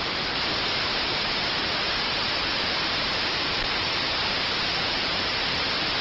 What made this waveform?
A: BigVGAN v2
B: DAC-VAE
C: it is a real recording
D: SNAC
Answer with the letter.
A